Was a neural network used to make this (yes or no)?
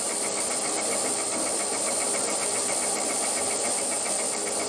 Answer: no